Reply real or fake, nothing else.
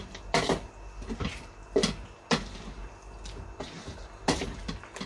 real